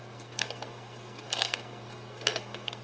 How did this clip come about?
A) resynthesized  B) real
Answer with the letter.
A